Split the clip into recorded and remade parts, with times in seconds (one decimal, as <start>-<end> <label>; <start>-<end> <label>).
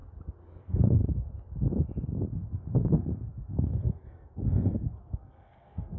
0.0-0.6 recorded; 0.6-1.0 remade; 1.0-2.5 recorded; 2.5-6.0 remade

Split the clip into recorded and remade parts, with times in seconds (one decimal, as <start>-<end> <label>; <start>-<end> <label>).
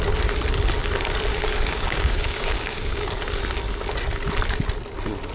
0.0-1.3 recorded; 1.3-3.1 remade; 3.1-5.3 recorded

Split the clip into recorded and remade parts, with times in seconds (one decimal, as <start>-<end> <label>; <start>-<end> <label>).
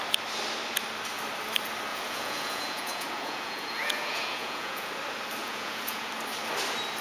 0.0-1.9 recorded; 1.9-4.9 remade; 4.9-5.4 recorded; 5.4-6.1 remade; 6.1-7.0 recorded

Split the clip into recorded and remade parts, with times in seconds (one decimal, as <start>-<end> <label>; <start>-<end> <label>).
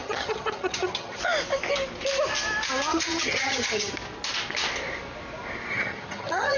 0.0-1.2 remade; 1.2-2.9 recorded; 2.9-3.9 remade; 3.9-5.7 recorded; 5.7-6.6 remade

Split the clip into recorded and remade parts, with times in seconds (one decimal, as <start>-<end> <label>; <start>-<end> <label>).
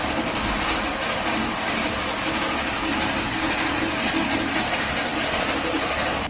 0.0-6.3 recorded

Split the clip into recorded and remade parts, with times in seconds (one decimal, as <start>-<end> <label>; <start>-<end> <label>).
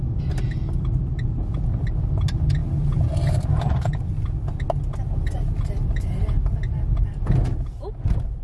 0.0-8.4 recorded